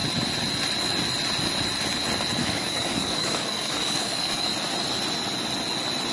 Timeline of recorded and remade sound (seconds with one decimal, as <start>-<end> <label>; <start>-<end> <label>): 0.0-2.4 recorded; 2.4-4.5 remade; 4.5-6.1 recorded